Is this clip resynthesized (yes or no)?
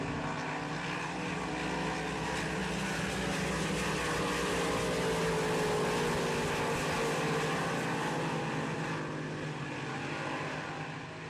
no